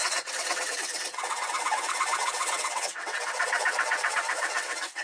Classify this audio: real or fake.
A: fake